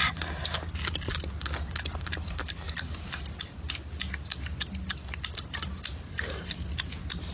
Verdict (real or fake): real